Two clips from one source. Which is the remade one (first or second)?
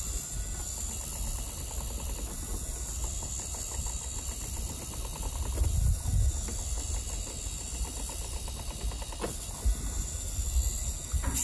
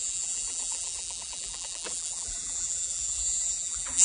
second